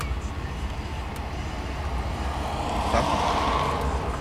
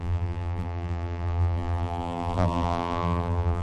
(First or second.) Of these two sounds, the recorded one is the first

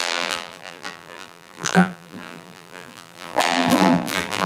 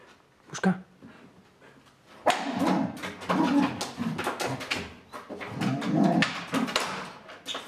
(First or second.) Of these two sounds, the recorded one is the second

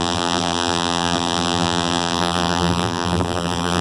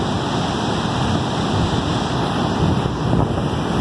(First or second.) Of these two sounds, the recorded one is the second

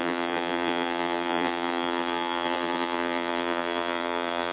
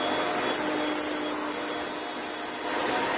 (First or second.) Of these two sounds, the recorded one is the second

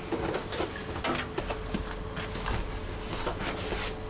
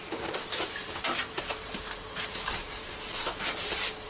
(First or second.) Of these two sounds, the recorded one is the first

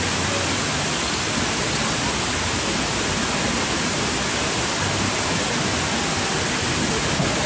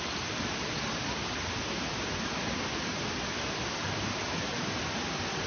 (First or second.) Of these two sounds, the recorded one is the first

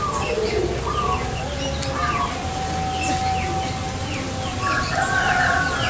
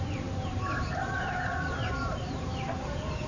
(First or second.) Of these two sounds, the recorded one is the first